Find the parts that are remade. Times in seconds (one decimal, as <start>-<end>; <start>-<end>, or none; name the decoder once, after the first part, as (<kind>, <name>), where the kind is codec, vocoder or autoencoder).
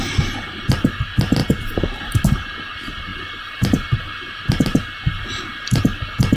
1.4-2.0 (vocoder, BigVGAN v2)